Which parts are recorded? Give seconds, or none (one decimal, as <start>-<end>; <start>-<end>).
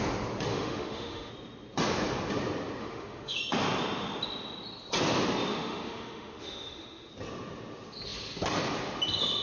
0.0-0.5; 1.3-2.8; 3.4-5.5; 7.1-9.4